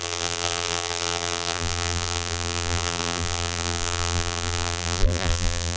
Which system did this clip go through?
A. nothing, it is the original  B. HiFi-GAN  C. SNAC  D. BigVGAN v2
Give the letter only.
D